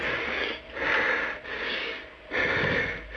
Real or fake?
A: real